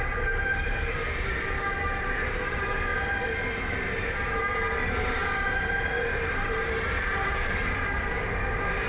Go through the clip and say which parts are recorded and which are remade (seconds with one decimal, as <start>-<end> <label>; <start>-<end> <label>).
0.0-8.9 remade

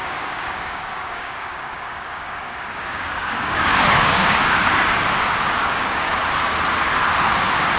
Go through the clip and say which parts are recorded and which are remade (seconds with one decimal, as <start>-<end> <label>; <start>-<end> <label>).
0.0-4.7 remade; 4.7-5.6 recorded; 5.6-6.1 remade; 6.1-7.8 recorded